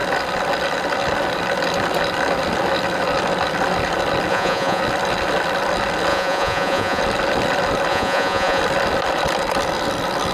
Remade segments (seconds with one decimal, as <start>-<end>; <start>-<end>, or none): 4.3-4.8; 6.1-7.0; 7.9-8.6